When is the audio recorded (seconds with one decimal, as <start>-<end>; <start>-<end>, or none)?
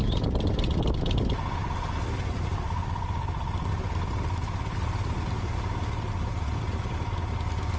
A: 0.0-7.8